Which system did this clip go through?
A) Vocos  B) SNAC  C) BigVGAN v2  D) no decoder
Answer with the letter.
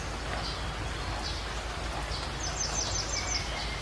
D